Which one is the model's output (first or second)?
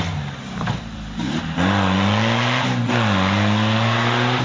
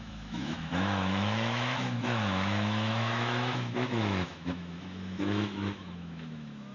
second